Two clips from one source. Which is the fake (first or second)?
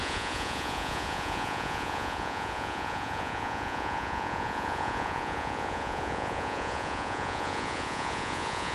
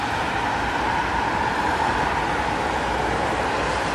first